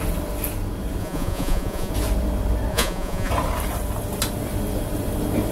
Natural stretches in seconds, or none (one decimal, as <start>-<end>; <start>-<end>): 0.0-1.0; 1.9-2.7; 3.3-5.5